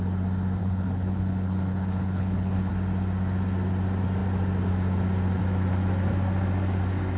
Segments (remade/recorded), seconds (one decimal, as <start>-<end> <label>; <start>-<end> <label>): 0.0-0.6 recorded; 0.6-2.7 remade; 2.7-7.2 recorded